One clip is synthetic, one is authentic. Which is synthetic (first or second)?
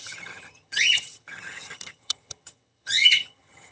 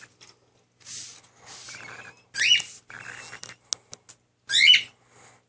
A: first